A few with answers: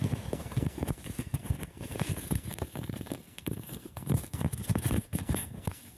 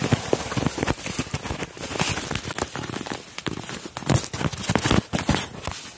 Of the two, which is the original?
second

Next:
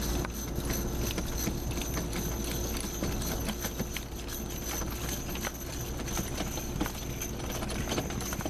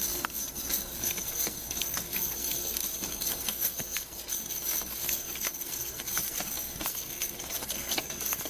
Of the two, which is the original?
first